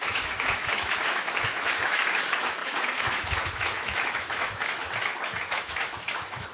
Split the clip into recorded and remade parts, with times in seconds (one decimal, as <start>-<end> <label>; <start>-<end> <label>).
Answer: 0.0-6.5 remade